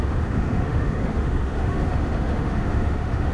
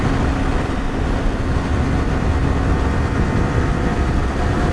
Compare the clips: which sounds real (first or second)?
second